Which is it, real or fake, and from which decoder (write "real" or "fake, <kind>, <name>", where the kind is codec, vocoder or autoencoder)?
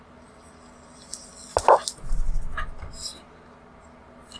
real